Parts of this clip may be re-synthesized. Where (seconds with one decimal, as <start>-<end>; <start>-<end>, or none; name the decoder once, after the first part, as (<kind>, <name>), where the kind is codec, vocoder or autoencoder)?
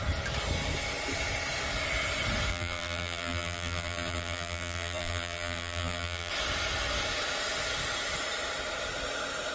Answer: 2.5-6.3 (vocoder, BigVGAN v2)